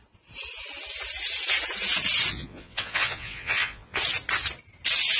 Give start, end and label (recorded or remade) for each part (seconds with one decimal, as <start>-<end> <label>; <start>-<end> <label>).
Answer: 0.0-2.3 recorded; 2.3-4.0 remade; 4.0-5.2 recorded